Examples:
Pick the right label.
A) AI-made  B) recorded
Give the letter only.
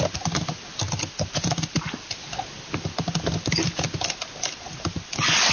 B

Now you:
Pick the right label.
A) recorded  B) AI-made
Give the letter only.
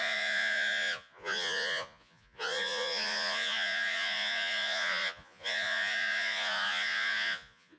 B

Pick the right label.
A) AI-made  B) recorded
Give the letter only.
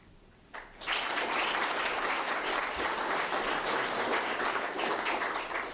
B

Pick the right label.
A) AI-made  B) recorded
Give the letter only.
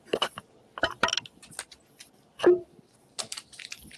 B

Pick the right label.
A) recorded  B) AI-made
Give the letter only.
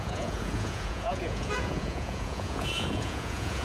B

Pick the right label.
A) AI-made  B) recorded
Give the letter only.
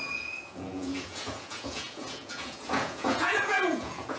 A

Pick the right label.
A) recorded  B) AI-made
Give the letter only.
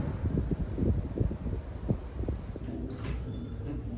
A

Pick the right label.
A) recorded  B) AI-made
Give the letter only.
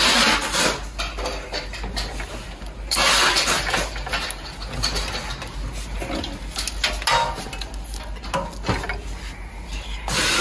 A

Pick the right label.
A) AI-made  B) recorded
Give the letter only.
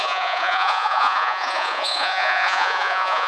A